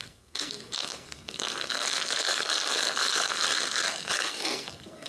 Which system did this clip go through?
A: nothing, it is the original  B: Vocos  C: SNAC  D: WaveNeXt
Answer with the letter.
C